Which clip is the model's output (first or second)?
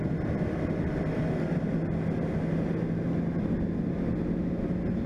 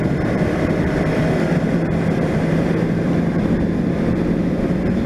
second